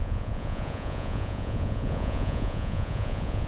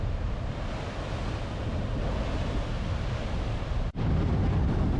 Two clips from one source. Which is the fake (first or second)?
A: first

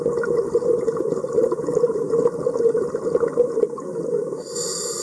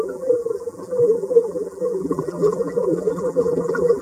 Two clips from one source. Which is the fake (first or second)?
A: second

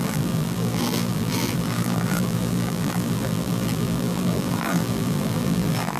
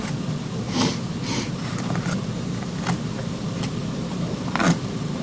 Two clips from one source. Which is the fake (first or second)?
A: first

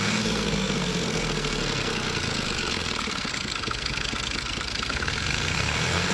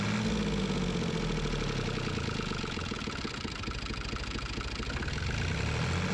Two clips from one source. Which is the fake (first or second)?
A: first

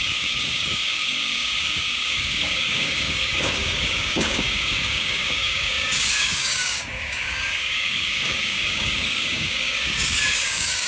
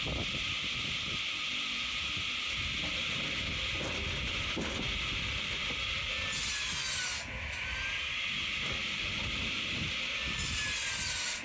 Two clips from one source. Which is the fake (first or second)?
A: first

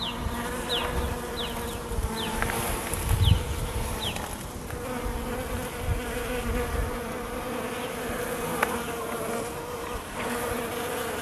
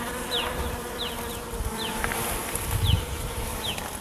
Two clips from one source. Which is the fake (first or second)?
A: second